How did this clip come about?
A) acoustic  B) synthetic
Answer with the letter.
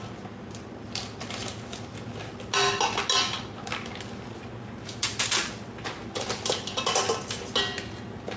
A